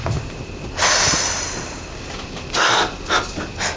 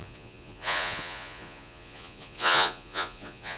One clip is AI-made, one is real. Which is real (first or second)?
first